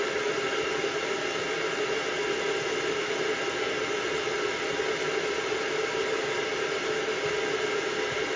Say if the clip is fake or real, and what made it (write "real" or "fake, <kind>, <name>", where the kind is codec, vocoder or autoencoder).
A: real